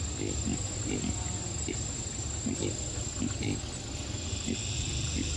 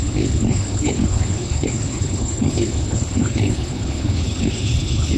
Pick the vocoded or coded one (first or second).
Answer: second